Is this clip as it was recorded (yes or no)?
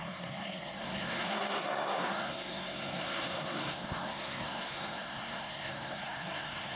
no